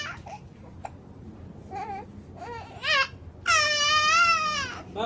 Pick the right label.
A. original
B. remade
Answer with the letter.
A